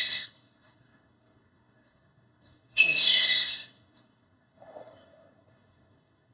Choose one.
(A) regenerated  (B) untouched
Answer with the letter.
A